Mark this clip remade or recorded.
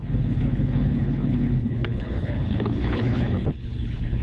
remade